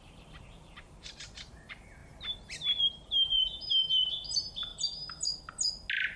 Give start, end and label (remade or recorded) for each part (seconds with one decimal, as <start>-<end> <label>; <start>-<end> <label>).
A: 0.0-2.0 remade; 2.0-2.8 recorded; 2.8-4.7 remade; 4.7-6.2 recorded